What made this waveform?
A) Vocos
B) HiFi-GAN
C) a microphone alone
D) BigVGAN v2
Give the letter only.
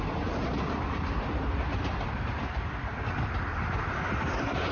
C